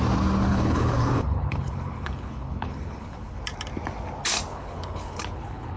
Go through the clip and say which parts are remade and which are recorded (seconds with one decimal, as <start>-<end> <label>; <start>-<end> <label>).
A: 0.0-0.5 recorded; 0.5-3.4 remade; 3.4-4.5 recorded; 4.5-5.8 remade